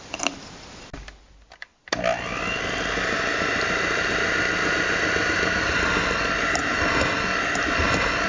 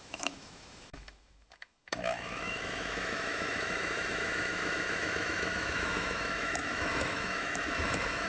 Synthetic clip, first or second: second